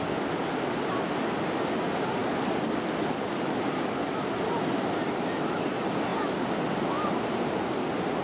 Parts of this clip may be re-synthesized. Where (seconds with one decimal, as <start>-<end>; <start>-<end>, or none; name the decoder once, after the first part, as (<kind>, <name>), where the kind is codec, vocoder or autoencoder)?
none